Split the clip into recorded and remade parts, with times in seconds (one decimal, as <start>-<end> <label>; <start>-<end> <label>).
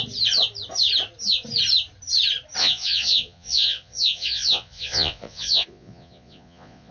0.0-2.6 recorded; 2.6-6.9 remade